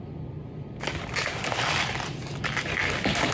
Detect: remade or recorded recorded